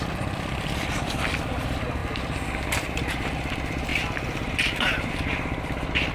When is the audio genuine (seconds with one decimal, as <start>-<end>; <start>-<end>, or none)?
2.0-2.7; 3.9-5.1